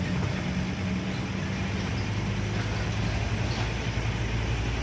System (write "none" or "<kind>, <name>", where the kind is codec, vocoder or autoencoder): none